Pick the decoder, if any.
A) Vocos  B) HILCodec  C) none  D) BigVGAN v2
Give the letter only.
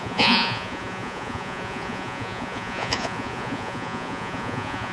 A